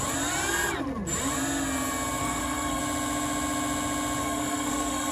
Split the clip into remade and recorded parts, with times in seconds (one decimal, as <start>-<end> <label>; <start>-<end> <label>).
0.0-2.2 recorded; 2.2-2.8 remade; 2.8-4.2 recorded; 4.2-5.1 remade